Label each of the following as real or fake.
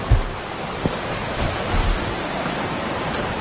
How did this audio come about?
fake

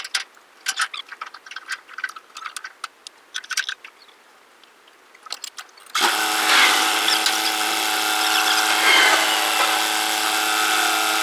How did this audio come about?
real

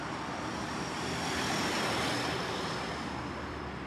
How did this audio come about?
fake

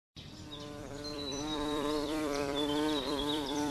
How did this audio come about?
fake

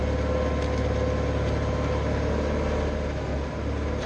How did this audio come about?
real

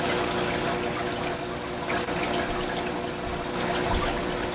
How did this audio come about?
real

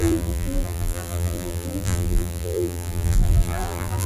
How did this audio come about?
fake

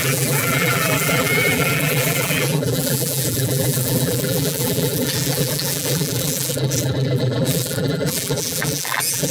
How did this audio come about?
fake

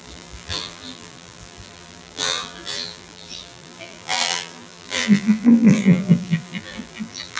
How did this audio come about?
fake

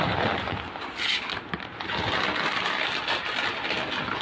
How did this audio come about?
real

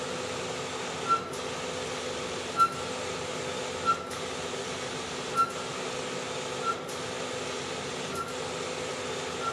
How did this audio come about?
real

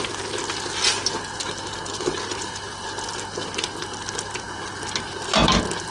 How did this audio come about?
real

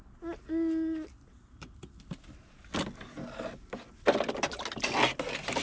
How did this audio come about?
real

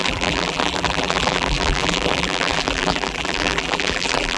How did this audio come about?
fake